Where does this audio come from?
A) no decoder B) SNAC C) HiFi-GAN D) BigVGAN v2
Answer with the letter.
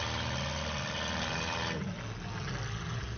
A